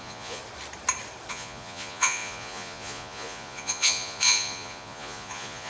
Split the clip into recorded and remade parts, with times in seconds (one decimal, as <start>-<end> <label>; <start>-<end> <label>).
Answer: 0.0-0.4 remade; 0.4-1.3 recorded; 1.3-5.7 remade